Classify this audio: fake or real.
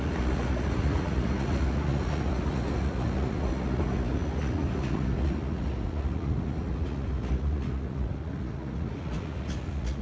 fake